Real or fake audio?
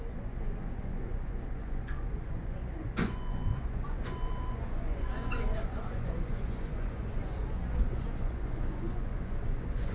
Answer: fake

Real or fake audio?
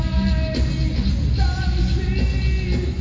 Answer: real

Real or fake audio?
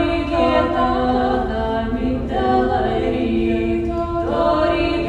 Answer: real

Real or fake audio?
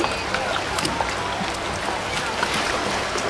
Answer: real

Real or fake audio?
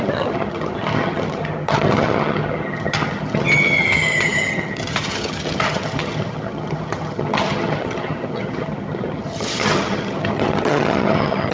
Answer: fake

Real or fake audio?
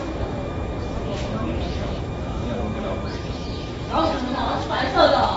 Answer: fake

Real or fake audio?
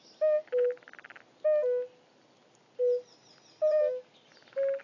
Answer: real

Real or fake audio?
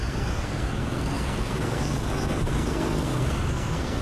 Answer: fake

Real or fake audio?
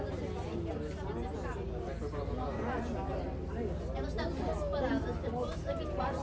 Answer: real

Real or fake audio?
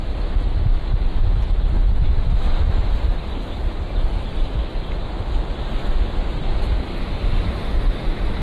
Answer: real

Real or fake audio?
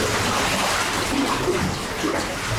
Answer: real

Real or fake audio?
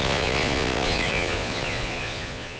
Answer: fake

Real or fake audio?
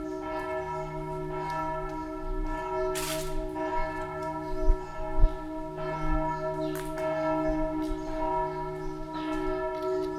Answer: real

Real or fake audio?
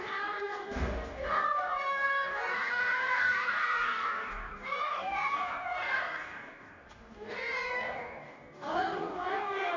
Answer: fake